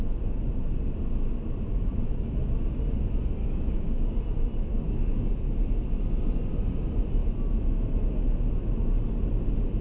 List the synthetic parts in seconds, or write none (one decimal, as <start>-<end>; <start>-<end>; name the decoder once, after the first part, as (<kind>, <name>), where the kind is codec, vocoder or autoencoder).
3.4-4.2 (codec, DAC); 4.7-5.3